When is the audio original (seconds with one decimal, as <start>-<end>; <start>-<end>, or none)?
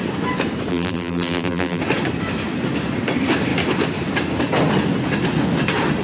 0.0-0.7; 1.8-6.0